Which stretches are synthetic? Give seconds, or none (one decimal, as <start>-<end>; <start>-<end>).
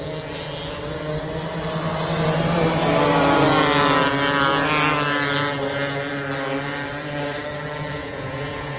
8.0-8.8